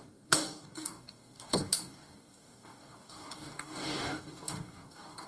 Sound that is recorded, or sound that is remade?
remade